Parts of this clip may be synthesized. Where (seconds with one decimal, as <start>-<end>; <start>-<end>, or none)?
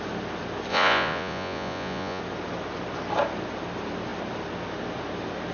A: 0.7-2.2